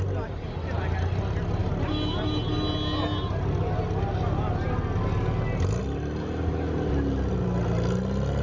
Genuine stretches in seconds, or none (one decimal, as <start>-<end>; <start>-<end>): 0.0-8.4